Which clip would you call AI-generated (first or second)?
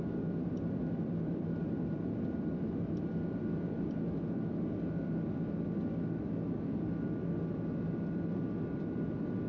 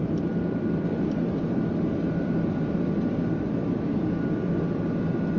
second